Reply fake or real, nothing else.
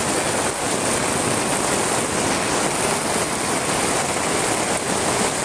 real